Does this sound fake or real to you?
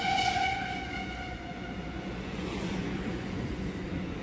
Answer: fake